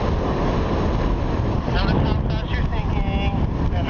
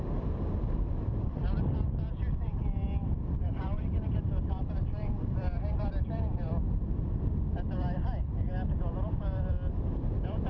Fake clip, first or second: second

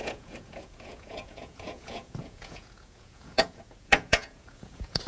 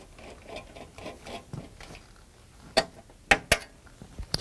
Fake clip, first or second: first